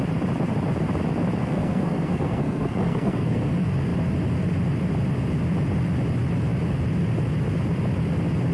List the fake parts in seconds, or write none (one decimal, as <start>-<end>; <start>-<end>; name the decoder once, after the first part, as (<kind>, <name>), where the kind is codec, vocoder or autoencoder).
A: 1.4-3.5 (codec, SNAC)